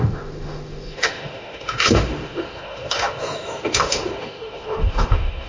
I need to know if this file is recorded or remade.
remade